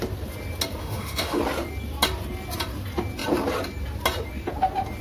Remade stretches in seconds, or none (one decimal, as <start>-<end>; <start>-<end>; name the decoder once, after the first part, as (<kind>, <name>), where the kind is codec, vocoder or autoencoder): 0.8-1.4 (autoencoder, DAC-VAE)